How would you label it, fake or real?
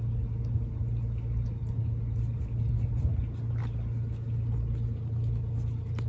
real